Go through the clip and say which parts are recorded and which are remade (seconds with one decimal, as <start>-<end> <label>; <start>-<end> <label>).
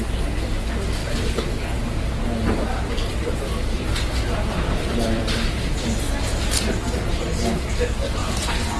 0.0-1.0 recorded; 1.0-1.5 remade; 1.5-2.7 recorded; 2.7-3.9 remade; 3.9-4.3 recorded; 4.3-6.0 remade; 6.0-8.2 recorded; 8.2-8.8 remade